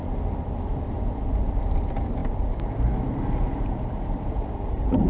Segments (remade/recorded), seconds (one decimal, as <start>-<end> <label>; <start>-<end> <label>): 0.0-5.1 recorded